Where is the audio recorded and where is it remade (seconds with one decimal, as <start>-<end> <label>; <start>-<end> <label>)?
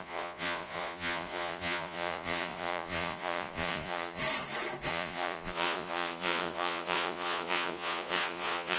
0.0-4.2 remade; 4.2-4.9 recorded; 4.9-8.8 remade